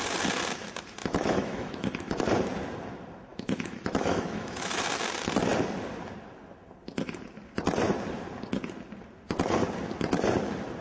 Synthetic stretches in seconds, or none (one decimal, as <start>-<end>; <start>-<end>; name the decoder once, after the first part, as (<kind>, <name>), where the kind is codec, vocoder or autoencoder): 1.0-2.2 (autoencoder, DAC-VAE); 3.3-4.8